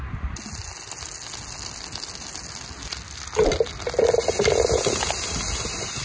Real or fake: real